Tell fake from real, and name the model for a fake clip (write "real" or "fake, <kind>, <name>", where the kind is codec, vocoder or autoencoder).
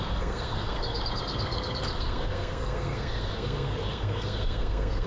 fake, codec, SNAC